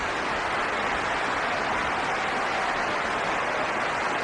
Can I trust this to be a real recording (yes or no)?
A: yes